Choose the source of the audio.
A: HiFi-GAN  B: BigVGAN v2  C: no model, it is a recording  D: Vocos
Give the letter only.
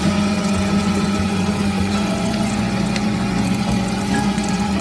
D